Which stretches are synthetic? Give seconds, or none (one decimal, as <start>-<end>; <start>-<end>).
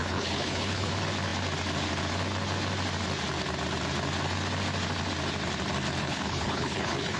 0.0-0.9; 6.0-7.2